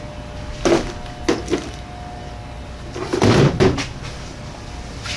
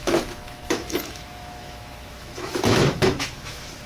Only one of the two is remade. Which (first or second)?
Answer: second